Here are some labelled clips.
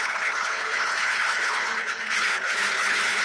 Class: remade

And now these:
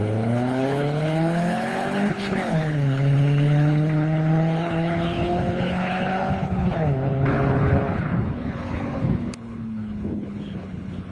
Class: remade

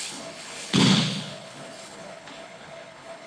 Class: remade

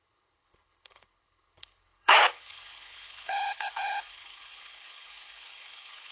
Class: remade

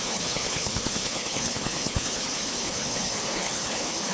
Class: remade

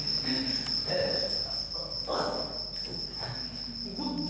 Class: recorded